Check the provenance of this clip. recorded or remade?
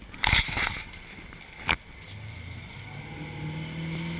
recorded